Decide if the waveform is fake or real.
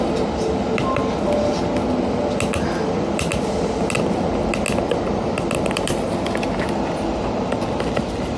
real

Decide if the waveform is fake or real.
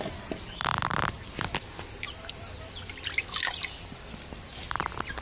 real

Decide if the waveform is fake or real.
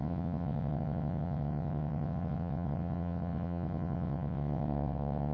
fake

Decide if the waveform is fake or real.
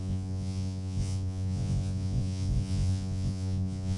fake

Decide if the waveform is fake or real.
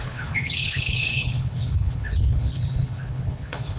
fake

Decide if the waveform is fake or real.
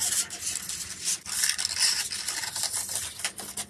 real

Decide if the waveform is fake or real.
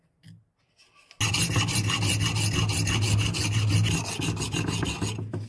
real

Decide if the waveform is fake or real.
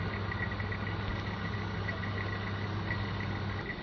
real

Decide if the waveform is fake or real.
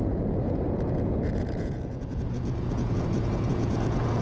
fake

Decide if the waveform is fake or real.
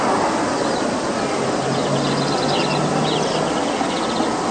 real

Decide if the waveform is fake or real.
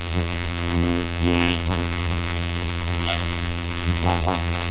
fake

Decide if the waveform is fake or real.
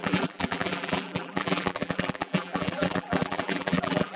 fake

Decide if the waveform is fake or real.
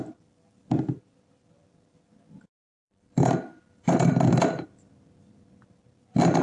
fake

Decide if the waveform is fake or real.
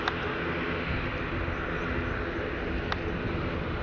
real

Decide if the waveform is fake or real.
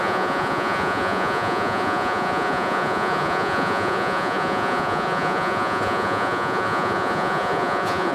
fake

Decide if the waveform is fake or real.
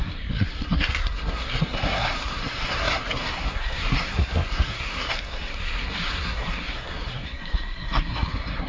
fake